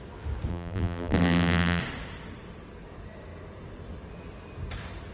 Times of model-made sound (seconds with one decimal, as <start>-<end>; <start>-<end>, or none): 0.5-1.8